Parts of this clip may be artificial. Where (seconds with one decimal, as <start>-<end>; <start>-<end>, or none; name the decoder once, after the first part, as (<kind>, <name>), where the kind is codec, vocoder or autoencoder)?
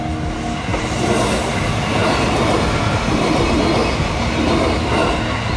none